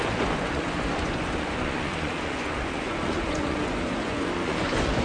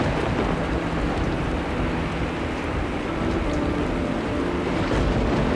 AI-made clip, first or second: first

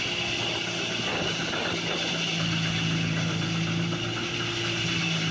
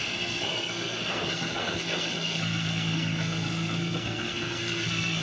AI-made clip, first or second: second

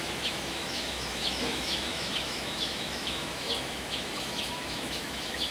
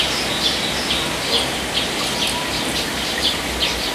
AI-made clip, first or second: first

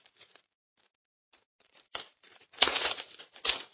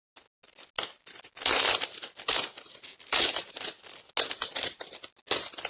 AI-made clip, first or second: first